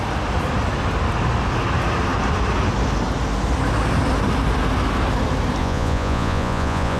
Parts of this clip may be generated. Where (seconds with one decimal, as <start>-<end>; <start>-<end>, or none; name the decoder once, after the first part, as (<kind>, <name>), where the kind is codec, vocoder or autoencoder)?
5.6-7.0 (vocoder, Vocos)